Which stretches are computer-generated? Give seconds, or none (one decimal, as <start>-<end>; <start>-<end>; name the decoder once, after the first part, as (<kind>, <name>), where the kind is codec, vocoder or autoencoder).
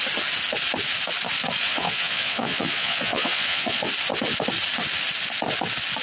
1.6-3.9 (vocoder, Vocos)